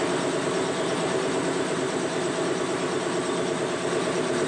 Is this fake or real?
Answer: real